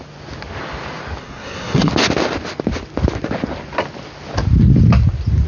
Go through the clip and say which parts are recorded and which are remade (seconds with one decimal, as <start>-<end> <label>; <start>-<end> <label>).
0.0-1.2 recorded; 1.2-1.9 remade; 1.9-5.5 recorded